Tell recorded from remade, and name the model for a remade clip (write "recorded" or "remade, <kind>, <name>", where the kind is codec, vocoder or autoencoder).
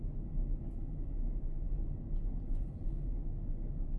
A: recorded